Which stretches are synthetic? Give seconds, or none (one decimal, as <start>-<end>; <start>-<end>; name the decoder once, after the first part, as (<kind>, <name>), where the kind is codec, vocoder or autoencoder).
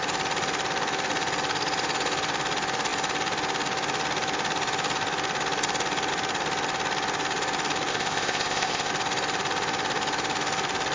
7.9-8.9 (codec, ZipCodec)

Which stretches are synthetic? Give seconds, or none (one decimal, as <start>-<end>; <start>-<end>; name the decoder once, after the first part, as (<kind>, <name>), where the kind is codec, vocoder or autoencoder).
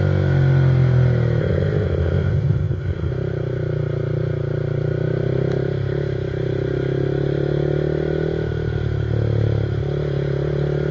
1.4-3.1 (codec, ZipCodec)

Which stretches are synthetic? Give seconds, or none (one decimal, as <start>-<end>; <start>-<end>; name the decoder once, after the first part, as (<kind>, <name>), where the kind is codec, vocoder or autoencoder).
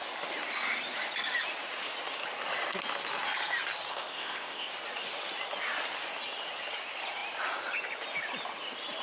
3.9-4.7 (codec, ZipCodec)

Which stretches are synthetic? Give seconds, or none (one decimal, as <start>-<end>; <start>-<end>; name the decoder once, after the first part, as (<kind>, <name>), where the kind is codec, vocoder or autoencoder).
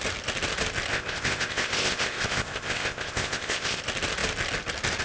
0.9-3.8 (codec, ZipCodec)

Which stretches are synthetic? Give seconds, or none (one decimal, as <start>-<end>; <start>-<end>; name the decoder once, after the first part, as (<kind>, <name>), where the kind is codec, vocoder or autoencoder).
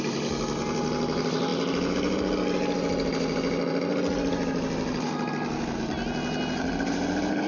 none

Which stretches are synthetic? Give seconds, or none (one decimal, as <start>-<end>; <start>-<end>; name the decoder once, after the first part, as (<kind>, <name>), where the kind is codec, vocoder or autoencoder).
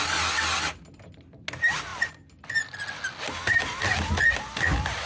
none